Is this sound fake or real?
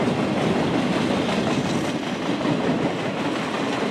real